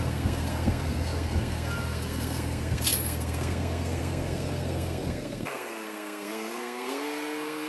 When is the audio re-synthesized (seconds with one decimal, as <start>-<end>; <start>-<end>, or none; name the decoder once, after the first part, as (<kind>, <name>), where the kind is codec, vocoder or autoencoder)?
0.0-7.7 (codec, SNAC)